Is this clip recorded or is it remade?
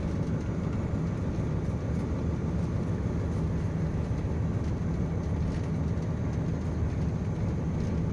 recorded